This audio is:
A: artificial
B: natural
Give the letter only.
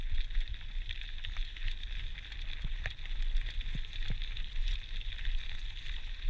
B